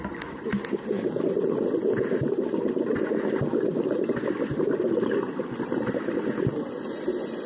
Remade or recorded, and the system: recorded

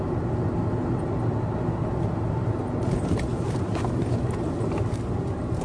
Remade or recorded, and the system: recorded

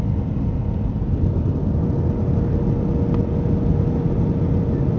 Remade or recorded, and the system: recorded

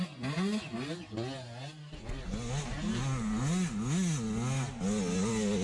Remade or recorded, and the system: recorded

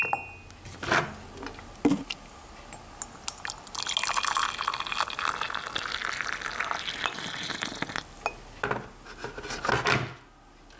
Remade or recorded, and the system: recorded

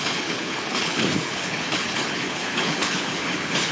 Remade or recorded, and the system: remade, codec, HILCodec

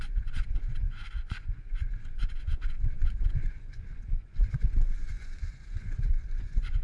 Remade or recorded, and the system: remade, vocoder, Vocos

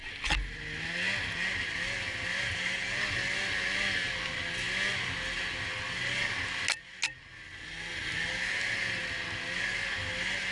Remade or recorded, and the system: recorded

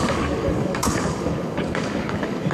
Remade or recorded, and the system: remade, codec, DAC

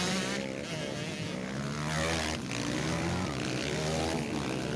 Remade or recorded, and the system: recorded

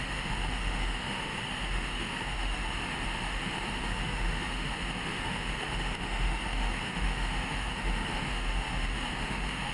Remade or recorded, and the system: remade, autoencoder, DAC-VAE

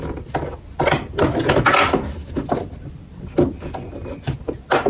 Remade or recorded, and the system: recorded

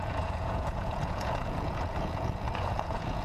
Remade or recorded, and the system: remade, vocoder, Vocos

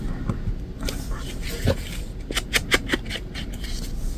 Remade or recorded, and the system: recorded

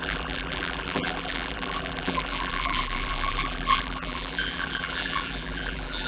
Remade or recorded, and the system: remade, vocoder, BigVGAN v2